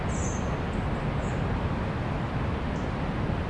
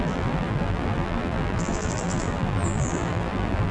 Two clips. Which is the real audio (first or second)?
first